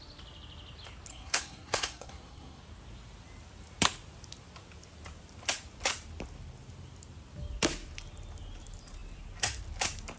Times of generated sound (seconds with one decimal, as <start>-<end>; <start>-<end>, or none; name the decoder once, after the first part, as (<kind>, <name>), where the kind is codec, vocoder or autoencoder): 1.1-2.6 (codec, SNAC)